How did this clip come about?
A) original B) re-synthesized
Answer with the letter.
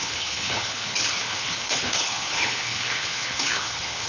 B